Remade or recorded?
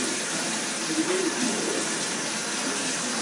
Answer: recorded